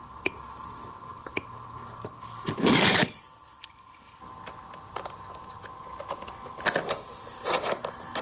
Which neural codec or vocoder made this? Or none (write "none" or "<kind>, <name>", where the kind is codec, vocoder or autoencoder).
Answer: none